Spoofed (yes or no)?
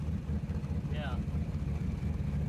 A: no